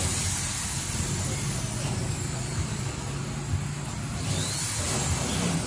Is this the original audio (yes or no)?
yes